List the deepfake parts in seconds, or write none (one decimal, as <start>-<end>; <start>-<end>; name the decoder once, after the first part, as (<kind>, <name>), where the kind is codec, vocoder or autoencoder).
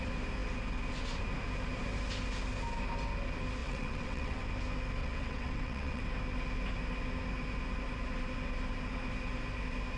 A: 3.6-4.4 (vocoder, WaveNeXt); 5.0-6.0